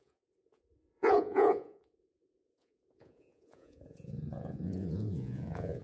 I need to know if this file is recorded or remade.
remade